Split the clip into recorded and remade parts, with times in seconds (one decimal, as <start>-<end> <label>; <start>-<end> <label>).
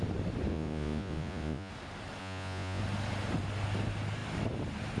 0.0-0.5 recorded; 0.5-1.7 remade; 1.7-2.2 recorded; 2.2-2.8 remade; 2.8-5.0 recorded